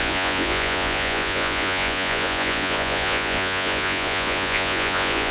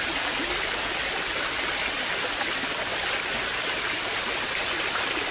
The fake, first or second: first